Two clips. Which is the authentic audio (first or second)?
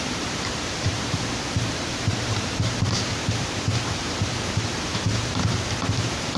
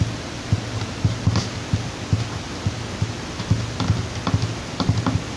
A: second